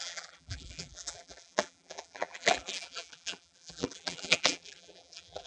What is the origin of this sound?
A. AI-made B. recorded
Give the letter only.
A